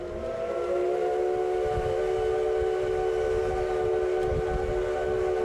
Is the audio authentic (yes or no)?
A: yes